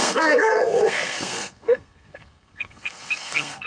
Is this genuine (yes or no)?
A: no